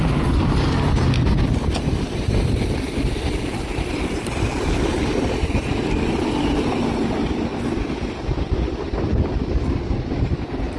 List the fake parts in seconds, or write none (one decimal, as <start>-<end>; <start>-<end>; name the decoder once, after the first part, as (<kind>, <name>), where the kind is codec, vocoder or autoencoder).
none